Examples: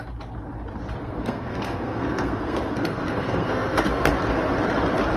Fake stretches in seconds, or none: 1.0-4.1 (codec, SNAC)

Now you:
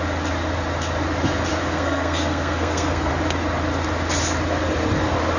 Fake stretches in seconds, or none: 1.6-3.1 (codec, SNAC)